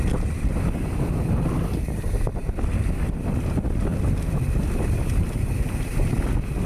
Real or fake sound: real